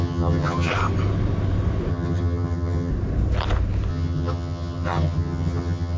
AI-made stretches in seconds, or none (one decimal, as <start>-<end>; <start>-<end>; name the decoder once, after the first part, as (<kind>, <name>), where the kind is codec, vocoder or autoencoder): 0.0-0.7 (vocoder, HiFi-GAN); 1.9-2.9; 3.9-6.0